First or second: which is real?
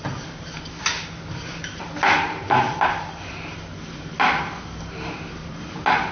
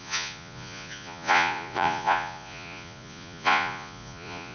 first